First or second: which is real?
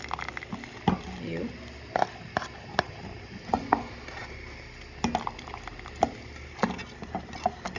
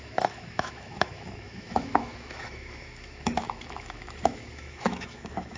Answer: first